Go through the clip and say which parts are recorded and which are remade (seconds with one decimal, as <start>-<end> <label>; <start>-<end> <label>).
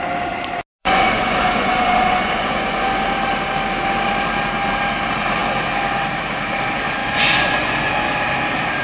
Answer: 0.0-0.8 recorded; 0.8-3.0 remade; 3.0-7.0 recorded; 7.0-7.9 remade; 7.9-8.8 recorded